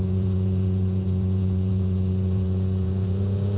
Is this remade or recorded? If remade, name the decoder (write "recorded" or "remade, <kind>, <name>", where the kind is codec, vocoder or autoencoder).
remade, vocoder, Vocos